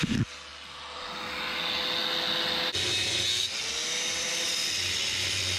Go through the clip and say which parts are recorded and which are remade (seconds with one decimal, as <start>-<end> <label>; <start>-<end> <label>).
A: 0.0-5.6 recorded